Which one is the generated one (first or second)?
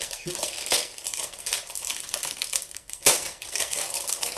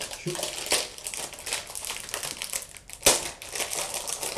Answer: first